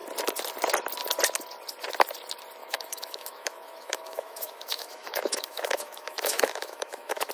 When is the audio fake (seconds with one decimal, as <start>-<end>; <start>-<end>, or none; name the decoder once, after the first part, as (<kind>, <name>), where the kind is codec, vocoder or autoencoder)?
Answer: 2.6-7.3 (autoencoder, DAC-VAE)

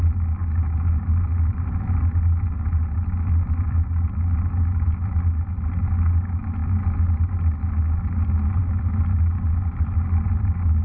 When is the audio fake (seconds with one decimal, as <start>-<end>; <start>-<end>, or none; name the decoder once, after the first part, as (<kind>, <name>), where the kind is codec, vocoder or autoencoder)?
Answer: none

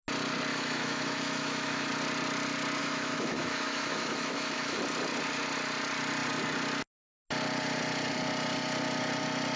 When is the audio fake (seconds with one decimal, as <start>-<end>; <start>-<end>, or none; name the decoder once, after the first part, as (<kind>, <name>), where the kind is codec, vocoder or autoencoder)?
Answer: 0.5-1.9 (autoencoder, DAC-VAE); 2.8-4.8

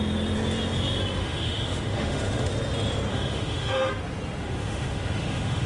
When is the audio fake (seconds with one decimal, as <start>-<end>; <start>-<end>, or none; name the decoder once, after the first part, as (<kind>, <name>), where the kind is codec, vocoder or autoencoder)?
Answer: 1.2-2.5 (autoencoder, DAC-VAE); 3.1-3.9; 4.4-5.7

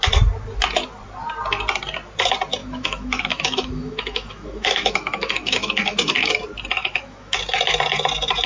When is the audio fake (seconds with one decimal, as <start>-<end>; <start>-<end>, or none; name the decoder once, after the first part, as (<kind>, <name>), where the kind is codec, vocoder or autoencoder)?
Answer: 2.6-6.3 (autoencoder, DAC-VAE); 6.8-7.4